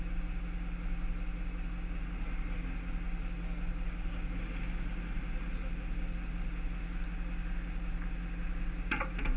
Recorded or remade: recorded